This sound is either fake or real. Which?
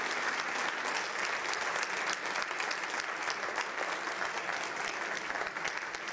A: real